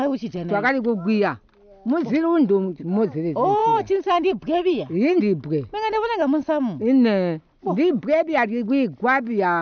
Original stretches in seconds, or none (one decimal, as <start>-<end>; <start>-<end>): 0.0-3.6; 5.2-9.6